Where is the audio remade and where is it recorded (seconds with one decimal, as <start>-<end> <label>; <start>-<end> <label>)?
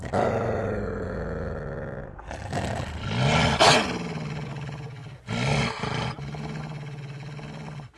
0.0-8.0 recorded